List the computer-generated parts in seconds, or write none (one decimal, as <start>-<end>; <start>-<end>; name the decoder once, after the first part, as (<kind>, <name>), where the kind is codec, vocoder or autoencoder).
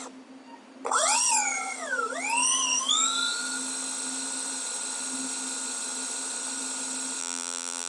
7.2-7.9 (vocoder, BigVGAN v2)